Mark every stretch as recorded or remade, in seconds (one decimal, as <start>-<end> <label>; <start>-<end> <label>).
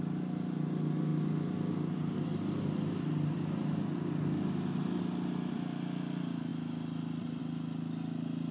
0.0-8.5 recorded